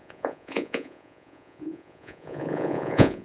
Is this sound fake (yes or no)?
yes